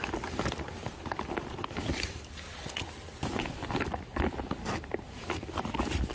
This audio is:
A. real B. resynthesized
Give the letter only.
A